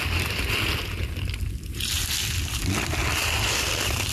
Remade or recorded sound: recorded